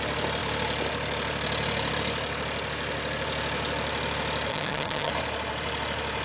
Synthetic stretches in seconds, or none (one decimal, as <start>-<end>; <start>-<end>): 4.5-5.1